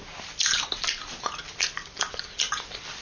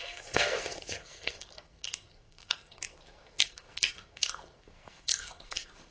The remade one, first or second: second